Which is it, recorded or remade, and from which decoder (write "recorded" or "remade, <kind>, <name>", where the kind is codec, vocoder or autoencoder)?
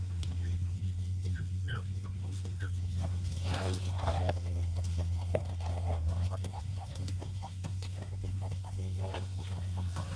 remade, codec, SNAC